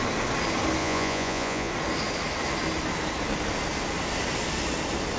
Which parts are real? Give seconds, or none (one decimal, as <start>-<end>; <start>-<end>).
0.0-0.8; 1.7-5.2